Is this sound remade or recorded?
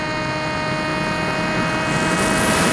recorded